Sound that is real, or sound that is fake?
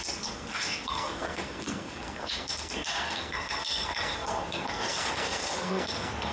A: fake